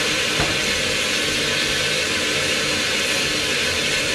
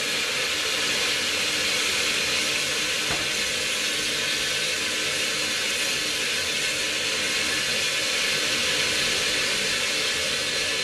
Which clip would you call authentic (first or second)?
second